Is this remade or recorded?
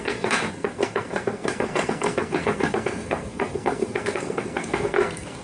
remade